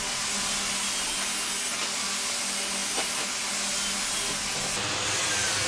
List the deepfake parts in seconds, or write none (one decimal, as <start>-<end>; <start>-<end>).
none